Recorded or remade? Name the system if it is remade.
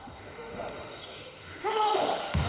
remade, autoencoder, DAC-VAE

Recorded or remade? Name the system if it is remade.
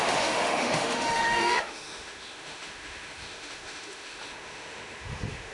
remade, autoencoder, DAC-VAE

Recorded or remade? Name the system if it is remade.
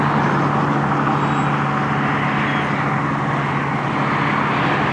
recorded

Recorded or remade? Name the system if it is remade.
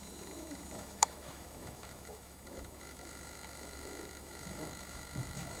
remade, autoencoder, DAC-VAE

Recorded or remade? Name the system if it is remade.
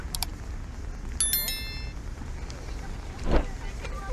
recorded